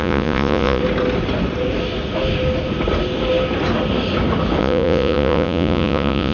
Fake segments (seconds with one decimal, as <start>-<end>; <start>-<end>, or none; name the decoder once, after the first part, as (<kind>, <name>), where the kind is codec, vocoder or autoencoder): 0.0-0.8 (vocoder, Vocos); 4.6-6.3